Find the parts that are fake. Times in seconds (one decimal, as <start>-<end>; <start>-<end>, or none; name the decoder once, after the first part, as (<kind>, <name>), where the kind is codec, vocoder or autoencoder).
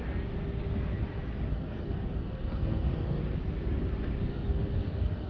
1.5-3.2 (codec, SNAC); 4.3-5.3